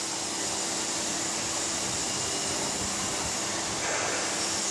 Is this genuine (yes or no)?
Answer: yes